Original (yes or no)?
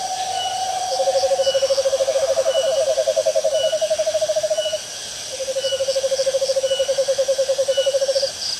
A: yes